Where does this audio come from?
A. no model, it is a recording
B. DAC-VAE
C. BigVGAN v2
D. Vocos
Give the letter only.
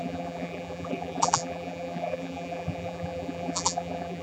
C